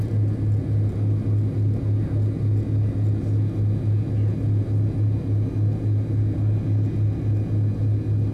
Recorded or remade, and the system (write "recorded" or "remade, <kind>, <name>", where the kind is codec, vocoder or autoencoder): recorded